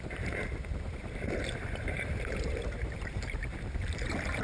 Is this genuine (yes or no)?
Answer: no